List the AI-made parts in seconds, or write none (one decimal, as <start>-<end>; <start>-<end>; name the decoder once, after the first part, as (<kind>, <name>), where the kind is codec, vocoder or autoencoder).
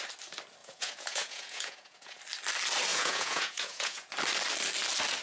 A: 0.6-2.2 (vocoder, Vocos); 2.9-4.1